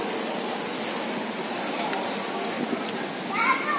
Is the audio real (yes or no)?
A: yes